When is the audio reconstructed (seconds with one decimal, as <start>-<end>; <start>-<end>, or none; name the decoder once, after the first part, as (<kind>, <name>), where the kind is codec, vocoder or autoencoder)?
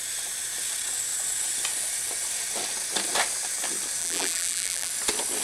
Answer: 4.0-4.9 (vocoder, BigVGAN v2)